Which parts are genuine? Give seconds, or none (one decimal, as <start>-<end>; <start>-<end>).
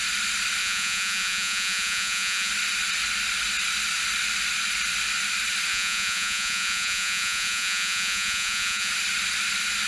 0.0-0.6; 2.5-5.7; 8.9-9.9